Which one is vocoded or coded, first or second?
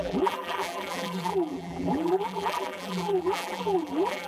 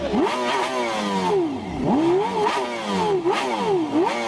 first